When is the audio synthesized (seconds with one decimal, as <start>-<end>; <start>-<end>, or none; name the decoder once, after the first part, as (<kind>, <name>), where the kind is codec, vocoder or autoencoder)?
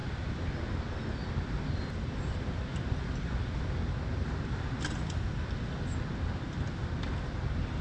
none